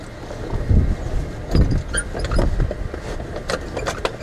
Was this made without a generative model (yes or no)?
yes